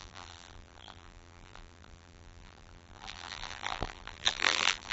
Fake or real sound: fake